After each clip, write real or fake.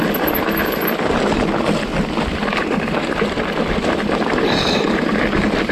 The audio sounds real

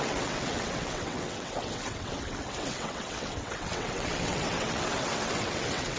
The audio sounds fake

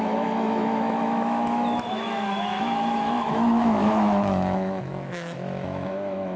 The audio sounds fake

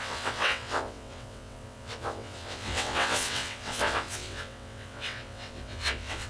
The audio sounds fake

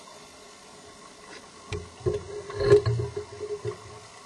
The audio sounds real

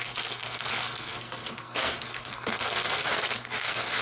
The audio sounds fake